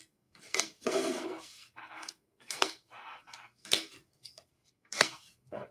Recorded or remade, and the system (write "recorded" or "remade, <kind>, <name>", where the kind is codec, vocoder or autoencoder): remade, codec, SNAC